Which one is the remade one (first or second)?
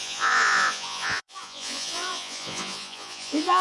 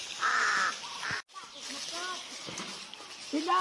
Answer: first